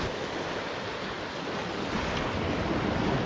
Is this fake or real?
real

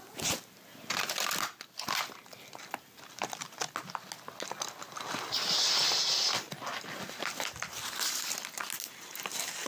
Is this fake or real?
real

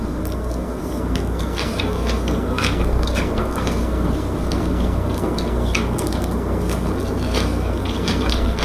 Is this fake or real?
fake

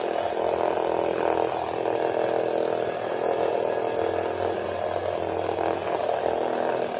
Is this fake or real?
real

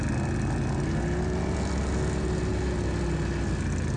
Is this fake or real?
real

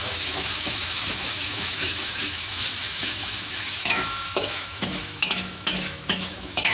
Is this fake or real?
fake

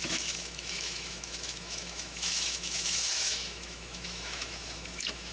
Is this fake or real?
fake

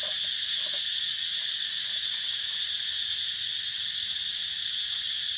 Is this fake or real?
real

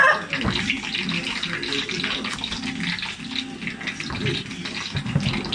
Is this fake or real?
real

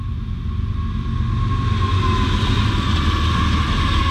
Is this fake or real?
real